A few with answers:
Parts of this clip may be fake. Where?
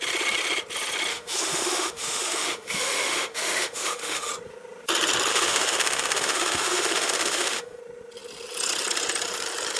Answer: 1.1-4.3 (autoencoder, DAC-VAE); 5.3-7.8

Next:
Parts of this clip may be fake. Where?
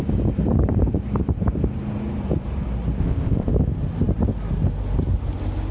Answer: 3.0-3.5 (codec, ZipCodec)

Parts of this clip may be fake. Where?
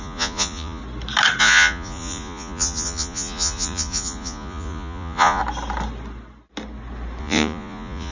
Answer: 0.0-0.8 (vocoder, Vocos); 1.4-5.4; 7.2-8.1